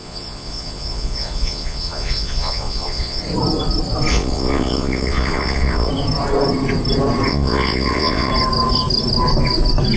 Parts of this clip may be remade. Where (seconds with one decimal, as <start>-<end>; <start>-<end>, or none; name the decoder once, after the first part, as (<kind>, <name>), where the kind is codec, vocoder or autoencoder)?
0.0-3.2 (vocoder, Vocos); 4.1-5.9; 7.3-8.3